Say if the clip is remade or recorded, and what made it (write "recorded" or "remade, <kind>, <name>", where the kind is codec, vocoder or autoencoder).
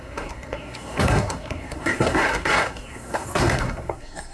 remade, codec, SNAC